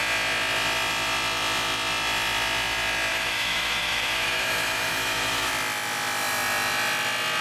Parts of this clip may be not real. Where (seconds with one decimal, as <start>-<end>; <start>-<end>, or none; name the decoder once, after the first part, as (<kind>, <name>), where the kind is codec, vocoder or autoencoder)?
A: 3.1-5.5 (autoencoder, DAC-VAE)

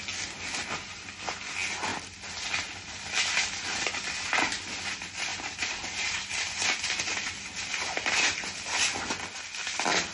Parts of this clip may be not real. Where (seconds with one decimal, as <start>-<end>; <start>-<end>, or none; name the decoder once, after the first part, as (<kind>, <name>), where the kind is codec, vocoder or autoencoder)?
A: 5.3-8.6 (vocoder, BigVGAN v2)

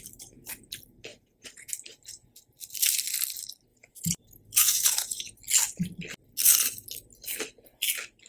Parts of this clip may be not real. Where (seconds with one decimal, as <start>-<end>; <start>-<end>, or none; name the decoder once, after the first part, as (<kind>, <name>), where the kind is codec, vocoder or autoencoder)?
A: 1.1-1.7 (vocoder, Vocos); 3.7-5.4

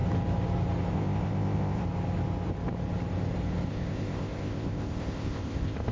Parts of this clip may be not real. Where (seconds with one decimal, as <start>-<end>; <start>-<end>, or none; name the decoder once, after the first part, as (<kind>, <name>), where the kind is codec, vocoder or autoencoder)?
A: 0.9-1.8 (codec, ZipCodec); 3.7-5.9

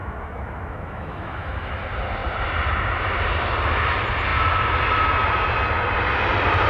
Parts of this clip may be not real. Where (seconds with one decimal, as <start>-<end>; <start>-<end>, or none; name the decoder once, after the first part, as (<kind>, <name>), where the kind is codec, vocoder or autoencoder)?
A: 0.0-1.8 (autoencoder, DAC-VAE)